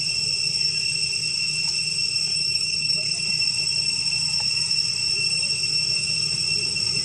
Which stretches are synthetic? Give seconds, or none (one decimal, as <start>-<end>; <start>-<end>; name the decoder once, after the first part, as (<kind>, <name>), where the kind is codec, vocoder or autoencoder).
2.3-3.2 (autoencoder, DAC-VAE)